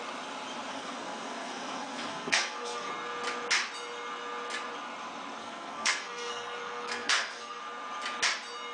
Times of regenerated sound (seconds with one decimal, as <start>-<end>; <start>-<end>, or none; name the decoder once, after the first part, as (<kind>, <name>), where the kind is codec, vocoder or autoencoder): 0.7-2.9 (codec, SNAC); 5.4-7.6